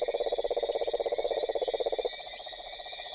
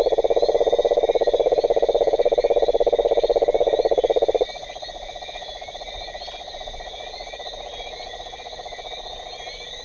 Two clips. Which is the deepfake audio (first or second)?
first